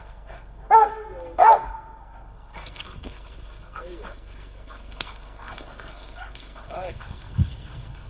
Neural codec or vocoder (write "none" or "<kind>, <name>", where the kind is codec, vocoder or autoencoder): codec, SNAC